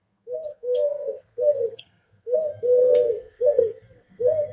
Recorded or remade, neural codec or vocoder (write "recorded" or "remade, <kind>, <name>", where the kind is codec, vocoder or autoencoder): remade, codec, SNAC